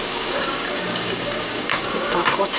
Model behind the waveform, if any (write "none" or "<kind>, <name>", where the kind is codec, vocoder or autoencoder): codec, DAC